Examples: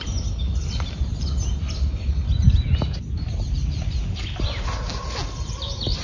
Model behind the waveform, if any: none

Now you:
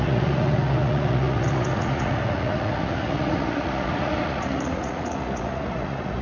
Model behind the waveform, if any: vocoder, Vocos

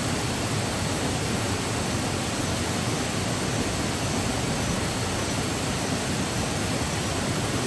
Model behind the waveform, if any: none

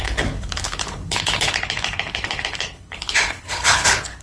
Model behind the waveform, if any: codec, HILCodec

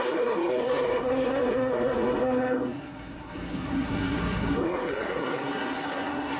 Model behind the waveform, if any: codec, SNAC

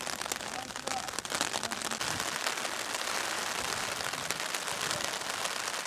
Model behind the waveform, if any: none